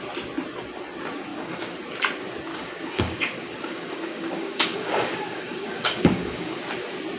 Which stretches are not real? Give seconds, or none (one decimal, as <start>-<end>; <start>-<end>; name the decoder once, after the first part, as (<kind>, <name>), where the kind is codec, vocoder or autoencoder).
1.3-1.8 (codec, DAC); 2.5-6.6